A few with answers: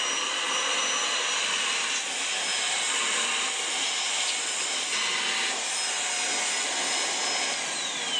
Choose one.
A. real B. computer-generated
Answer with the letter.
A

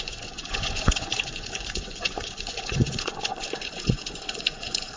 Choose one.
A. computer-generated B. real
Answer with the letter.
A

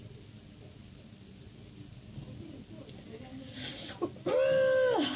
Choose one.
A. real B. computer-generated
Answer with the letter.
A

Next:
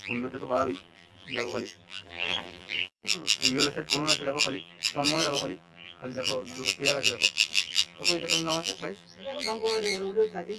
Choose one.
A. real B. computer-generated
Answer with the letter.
B